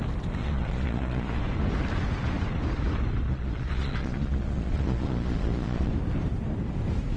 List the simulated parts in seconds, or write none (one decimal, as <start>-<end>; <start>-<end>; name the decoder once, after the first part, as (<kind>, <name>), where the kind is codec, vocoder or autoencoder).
0.4-1.4 (vocoder, Vocos); 3.3-5.9

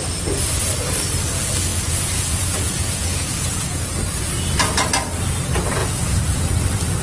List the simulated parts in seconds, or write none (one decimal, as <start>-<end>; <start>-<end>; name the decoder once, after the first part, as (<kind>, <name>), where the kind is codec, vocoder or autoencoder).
1.7-3.8 (vocoder, Vocos); 5.8-6.5

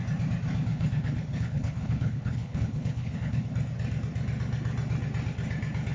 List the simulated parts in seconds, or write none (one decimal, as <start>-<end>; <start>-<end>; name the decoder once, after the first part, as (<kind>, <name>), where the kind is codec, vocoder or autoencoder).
0.7-3.5 (codec, HILCodec)

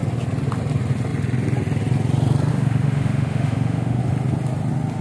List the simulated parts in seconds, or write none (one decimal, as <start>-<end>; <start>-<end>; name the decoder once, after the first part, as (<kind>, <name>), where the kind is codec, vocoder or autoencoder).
2.5-4.0 (autoencoder, DAC-VAE)

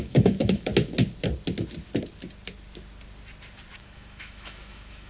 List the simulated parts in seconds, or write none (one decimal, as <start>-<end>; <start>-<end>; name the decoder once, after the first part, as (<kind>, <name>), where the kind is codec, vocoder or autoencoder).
0.0-0.7 (autoencoder, DAC-VAE); 3.8-5.1

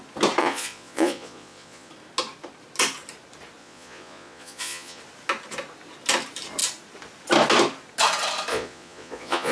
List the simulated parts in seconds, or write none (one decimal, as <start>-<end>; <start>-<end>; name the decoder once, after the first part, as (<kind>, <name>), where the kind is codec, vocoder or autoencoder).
0.4-1.9 (vocoder, Vocos); 3.6-5.0; 8.5-9.5